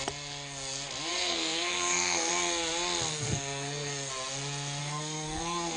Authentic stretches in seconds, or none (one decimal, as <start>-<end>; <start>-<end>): 0.0-1.1; 2.3-3.1; 4.1-4.8